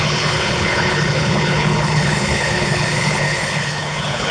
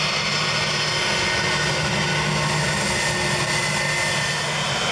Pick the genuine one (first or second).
second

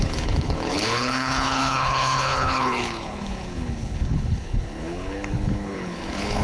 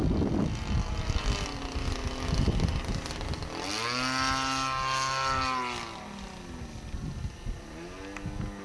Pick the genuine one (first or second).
second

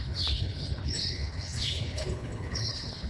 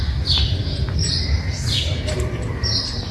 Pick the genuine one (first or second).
second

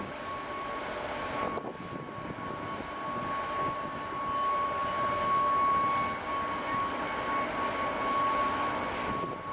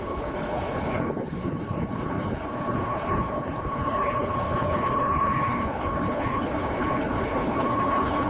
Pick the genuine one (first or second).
first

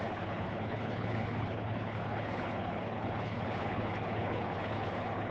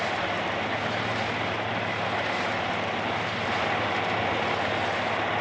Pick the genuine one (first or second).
second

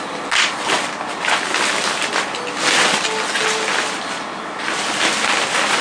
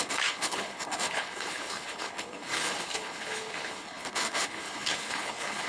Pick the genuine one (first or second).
first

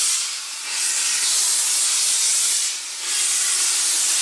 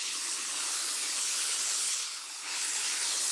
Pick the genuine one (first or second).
first